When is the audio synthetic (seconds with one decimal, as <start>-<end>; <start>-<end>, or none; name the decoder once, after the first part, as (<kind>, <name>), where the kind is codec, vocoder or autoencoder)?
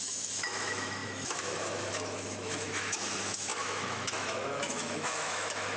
0.0-5.8 (autoencoder, DAC-VAE)